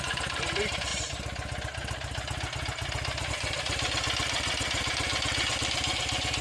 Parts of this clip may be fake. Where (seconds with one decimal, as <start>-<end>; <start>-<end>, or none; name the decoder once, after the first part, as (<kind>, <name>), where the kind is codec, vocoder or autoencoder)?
0.0-0.9 (vocoder, BigVGAN v2); 3.3-6.4